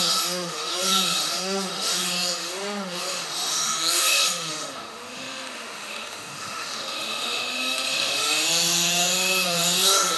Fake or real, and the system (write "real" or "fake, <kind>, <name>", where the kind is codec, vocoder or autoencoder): fake, autoencoder, DAC-VAE